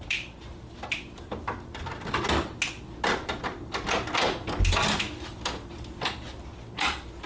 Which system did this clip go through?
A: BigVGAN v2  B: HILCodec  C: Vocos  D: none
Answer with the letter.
D